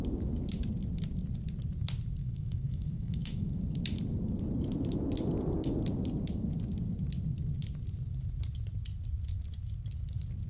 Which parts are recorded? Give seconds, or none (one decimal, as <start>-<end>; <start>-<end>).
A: 0.0-2.2; 3.6-10.5